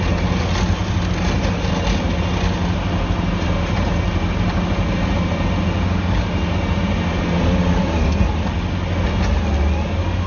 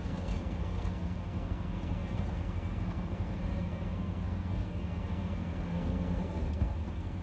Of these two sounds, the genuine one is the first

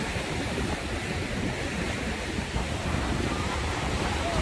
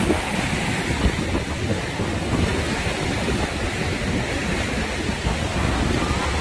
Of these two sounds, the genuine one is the second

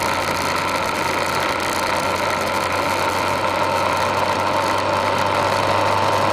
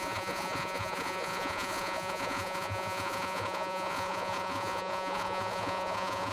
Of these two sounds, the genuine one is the first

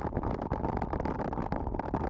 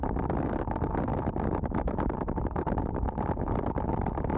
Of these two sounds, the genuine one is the second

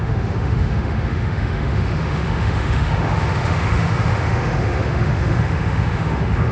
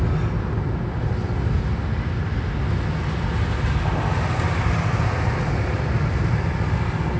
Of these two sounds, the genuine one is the second